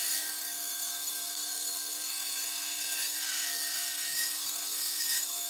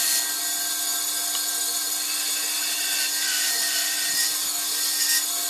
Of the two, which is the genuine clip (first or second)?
second